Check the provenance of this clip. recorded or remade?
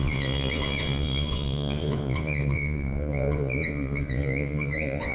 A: remade